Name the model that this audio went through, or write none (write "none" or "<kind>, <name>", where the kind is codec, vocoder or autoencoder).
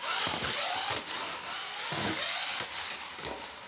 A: none